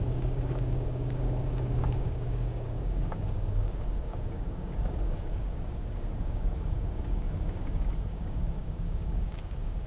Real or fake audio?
fake